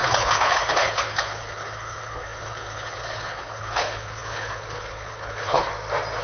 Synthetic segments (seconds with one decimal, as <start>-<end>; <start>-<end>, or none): 0.0-5.7